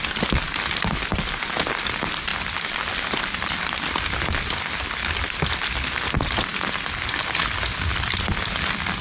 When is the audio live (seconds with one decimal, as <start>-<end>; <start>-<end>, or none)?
0.0-9.0